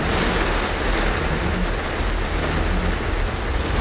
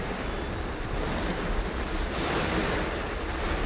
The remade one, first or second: second